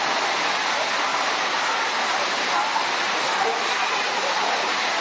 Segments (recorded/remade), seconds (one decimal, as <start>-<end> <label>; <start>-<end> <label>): 0.0-1.1 recorded; 1.1-3.5 remade; 3.5-5.0 recorded